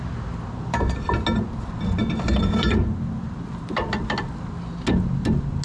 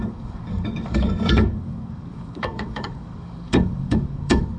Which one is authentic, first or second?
first